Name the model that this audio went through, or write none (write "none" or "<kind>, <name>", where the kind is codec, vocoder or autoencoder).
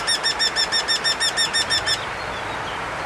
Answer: none